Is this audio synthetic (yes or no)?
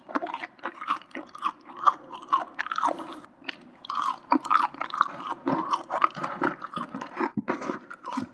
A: yes